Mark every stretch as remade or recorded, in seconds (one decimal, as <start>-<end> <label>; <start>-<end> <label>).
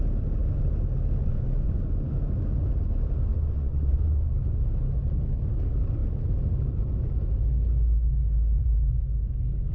0.0-1.2 recorded; 1.2-1.8 remade; 1.8-3.3 recorded; 3.3-4.2 remade; 4.2-9.7 recorded